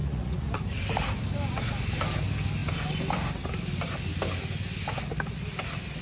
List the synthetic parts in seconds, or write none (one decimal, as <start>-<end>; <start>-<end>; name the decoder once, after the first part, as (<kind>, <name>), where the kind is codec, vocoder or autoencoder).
0.0-0.5 (vocoder, Vocos)